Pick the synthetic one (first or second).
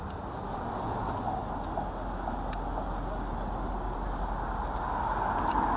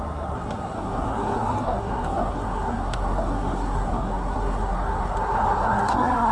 second